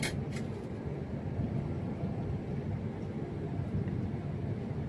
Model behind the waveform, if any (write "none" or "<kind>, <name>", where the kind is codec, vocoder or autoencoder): none